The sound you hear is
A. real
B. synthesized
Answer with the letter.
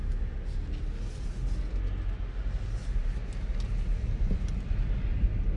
A